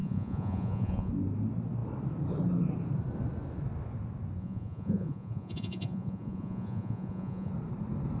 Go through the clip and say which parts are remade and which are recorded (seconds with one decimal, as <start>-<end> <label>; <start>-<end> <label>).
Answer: 0.0-1.1 remade; 1.1-4.4 recorded; 4.4-7.5 remade; 7.5-8.2 recorded